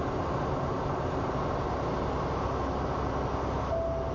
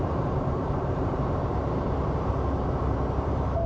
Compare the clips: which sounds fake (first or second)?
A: second